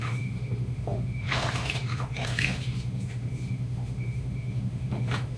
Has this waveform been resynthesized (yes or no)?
yes